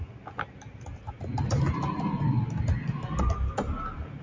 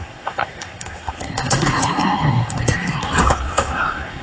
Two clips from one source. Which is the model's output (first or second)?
second